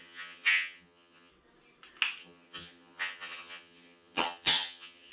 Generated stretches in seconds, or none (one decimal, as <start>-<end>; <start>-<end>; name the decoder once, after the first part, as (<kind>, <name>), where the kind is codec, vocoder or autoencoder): 0.0-1.3 (vocoder, HiFi-GAN); 2.2-5.1